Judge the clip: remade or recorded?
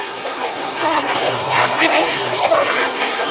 remade